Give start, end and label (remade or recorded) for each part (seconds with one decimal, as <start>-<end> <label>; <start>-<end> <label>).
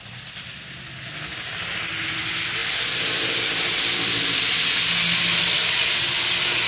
0.0-2.6 recorded; 2.6-4.7 remade; 4.7-6.7 recorded